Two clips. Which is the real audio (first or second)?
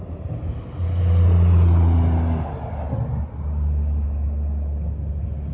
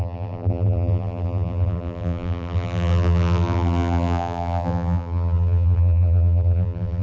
first